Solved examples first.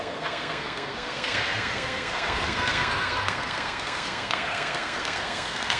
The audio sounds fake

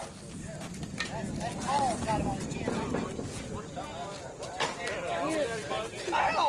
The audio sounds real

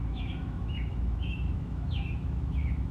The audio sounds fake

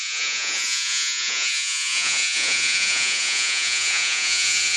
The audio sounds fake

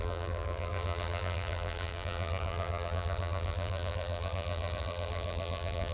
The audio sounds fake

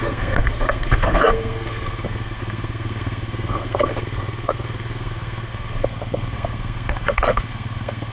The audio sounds fake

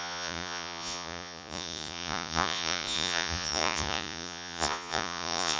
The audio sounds fake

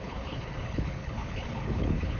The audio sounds fake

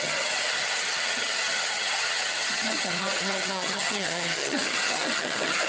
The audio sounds fake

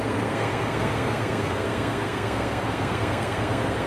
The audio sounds fake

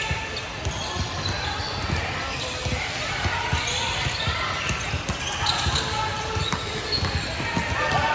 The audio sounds real